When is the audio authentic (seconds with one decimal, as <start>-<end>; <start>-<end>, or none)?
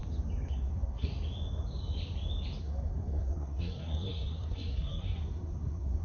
0.0-0.5; 1.1-2.6